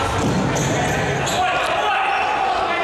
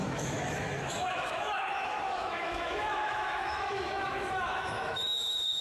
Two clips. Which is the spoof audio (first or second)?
second